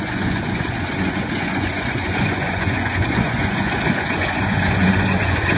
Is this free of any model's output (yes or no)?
no